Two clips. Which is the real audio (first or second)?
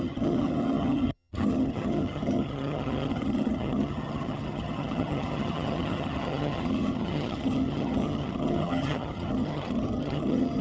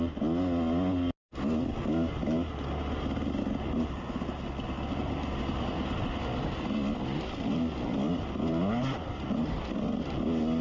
second